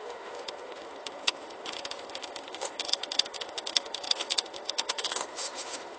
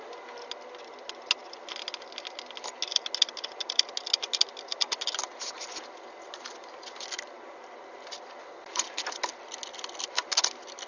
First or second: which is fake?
first